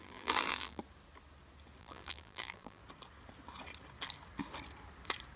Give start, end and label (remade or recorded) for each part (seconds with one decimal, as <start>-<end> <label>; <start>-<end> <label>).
0.0-0.8 remade; 0.8-1.8 recorded; 1.8-2.8 remade; 2.8-5.4 recorded